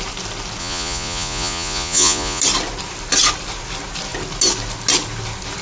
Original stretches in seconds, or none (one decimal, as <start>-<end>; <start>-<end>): 0.0-0.6; 2.4-5.6